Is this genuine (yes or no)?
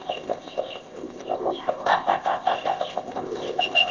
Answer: no